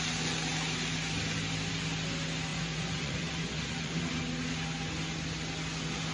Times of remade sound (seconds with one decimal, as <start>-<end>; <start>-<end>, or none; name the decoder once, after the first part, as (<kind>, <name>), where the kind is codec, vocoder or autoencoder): 2.5-4.0 (vocoder, Vocos)